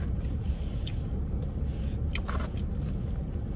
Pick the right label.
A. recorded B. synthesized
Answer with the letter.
A